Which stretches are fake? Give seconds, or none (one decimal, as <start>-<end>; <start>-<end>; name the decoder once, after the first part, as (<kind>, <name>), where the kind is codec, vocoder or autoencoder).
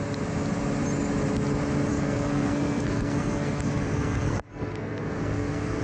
1.9-5.8 (codec, SNAC)